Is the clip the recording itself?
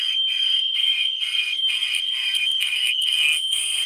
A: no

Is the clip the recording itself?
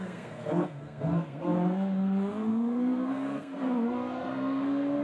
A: no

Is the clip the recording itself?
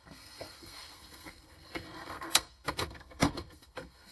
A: no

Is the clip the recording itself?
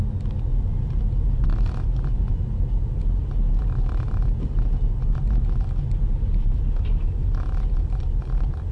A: yes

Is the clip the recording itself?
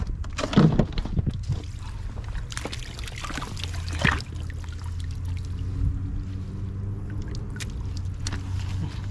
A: yes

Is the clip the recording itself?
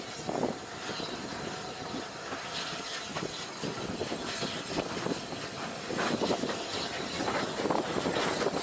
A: yes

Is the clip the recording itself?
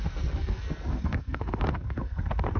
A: no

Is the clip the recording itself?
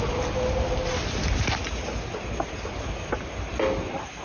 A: yes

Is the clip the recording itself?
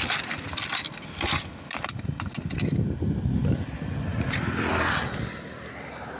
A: yes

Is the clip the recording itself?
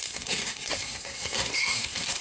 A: no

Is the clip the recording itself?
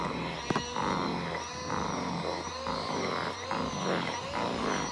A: yes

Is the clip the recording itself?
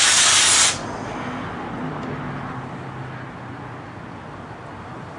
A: yes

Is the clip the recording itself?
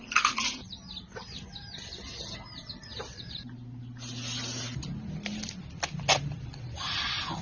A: yes